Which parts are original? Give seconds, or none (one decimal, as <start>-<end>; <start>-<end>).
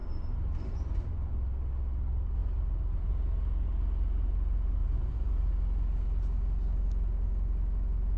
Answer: 1.3-2.4; 3.1-4.8; 5.5-8.2